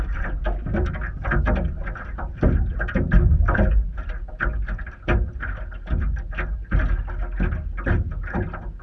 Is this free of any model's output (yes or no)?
yes